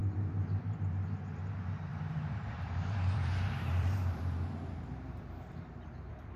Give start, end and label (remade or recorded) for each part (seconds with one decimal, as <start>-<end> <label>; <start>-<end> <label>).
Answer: 0.0-0.6 recorded; 0.6-6.4 remade